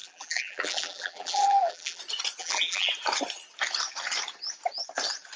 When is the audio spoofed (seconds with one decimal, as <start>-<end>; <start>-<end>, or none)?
0.0-2.0; 2.4-2.9

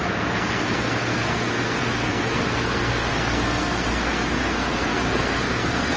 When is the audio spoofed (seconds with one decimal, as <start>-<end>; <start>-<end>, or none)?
0.0-6.0

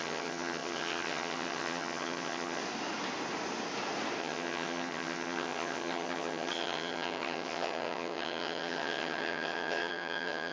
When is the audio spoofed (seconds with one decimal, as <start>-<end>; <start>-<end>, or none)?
0.0-2.6; 4.2-10.5

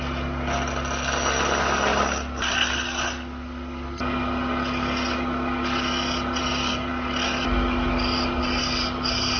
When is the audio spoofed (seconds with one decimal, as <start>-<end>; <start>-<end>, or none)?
none